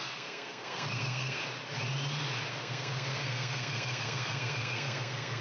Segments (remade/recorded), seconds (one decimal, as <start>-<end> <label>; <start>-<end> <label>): 0.0-1.4 remade; 1.4-2.5 recorded; 2.5-5.4 remade